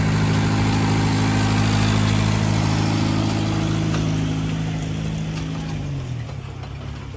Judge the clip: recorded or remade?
recorded